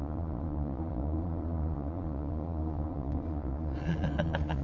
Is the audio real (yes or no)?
no